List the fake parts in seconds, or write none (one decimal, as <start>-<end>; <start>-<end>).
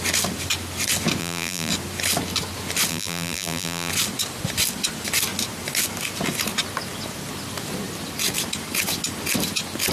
1.2-1.7; 2.9-3.9